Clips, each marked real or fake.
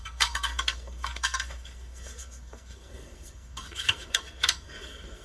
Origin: fake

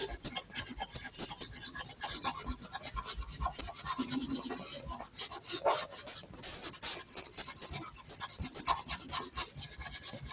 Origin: real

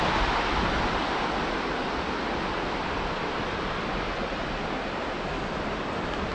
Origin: real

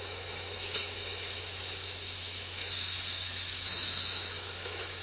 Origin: fake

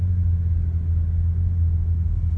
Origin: real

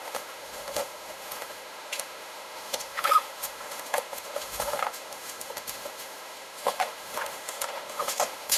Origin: fake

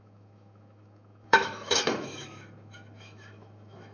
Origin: fake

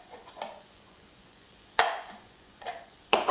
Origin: fake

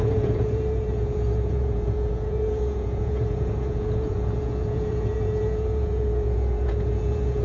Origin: fake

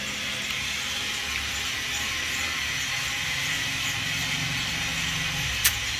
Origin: real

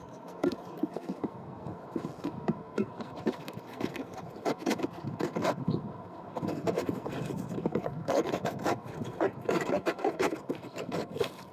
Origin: fake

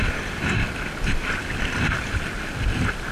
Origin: real